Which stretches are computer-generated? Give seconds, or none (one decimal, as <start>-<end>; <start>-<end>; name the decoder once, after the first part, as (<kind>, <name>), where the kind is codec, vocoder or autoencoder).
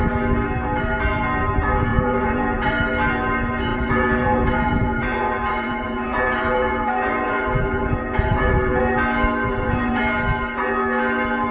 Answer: 1.9-2.9 (vocoder, Vocos); 3.7-8.8; 9.5-10.0